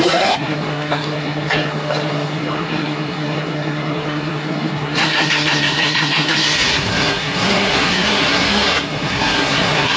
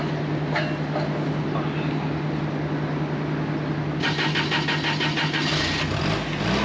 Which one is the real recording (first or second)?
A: second